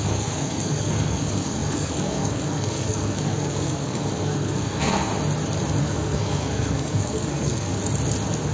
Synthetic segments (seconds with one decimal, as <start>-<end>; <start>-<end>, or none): 0.0-5.1; 5.8-7.7